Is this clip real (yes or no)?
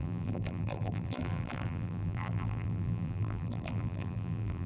no